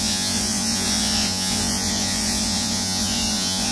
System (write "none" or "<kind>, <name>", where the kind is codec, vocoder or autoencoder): vocoder, Vocos